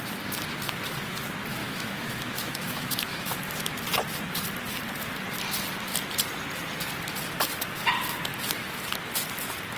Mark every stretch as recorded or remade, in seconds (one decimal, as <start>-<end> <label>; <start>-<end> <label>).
0.0-1.6 recorded; 1.6-3.4 remade; 3.4-9.8 recorded